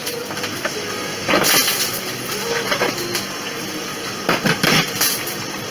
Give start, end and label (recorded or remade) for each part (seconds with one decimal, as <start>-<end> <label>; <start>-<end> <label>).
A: 0.0-5.7 recorded